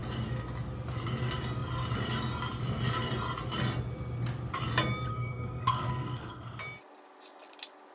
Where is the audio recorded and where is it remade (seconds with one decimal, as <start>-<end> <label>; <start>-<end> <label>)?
0.0-5.1 recorded; 5.1-6.6 remade; 6.6-7.9 recorded